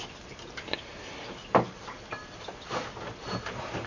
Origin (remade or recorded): recorded